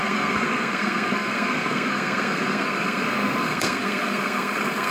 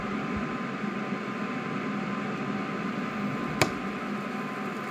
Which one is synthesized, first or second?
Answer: first